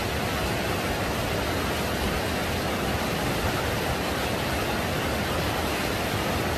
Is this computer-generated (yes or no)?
no